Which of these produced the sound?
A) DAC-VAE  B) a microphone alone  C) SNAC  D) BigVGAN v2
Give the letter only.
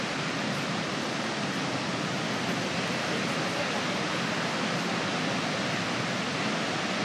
B